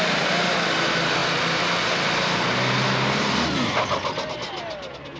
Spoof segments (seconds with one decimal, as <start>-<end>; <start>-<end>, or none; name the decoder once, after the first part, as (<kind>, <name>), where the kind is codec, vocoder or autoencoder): none